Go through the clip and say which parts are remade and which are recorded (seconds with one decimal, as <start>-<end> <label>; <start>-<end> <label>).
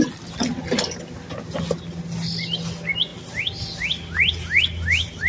0.0-5.3 recorded